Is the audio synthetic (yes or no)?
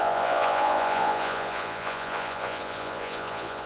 yes